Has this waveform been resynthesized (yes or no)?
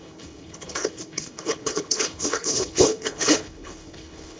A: yes